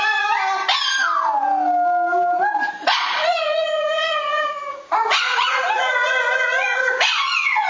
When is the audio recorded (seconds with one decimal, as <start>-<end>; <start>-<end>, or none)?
0.0-2.8